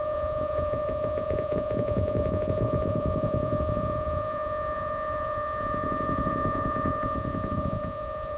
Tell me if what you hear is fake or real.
fake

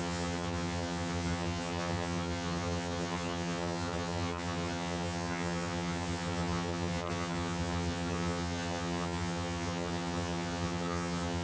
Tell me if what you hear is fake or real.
fake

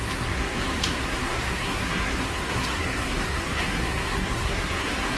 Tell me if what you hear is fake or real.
fake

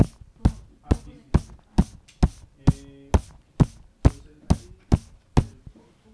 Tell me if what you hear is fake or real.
real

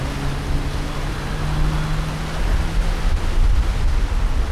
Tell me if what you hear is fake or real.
real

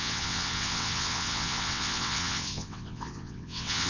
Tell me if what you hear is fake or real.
fake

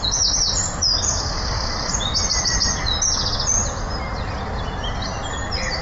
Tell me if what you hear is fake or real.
real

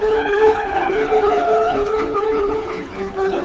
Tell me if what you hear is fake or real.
fake